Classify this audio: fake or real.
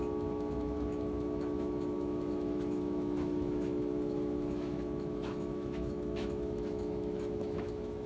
fake